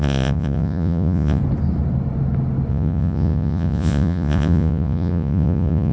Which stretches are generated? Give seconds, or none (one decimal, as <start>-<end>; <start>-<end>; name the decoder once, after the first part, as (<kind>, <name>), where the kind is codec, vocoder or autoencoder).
0.0-1.4 (vocoder, Vocos); 2.7-5.9